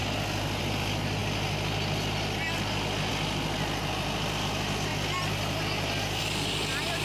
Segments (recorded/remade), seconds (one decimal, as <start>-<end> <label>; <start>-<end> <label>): 0.0-7.0 recorded